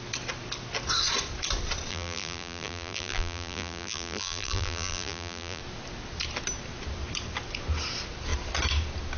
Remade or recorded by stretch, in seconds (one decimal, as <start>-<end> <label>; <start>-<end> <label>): 0.0-1.9 recorded; 1.9-5.6 remade; 5.6-9.2 recorded